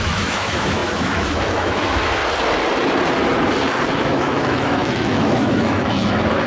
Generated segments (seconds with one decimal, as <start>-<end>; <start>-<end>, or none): 0.0-2.2; 4.0-6.5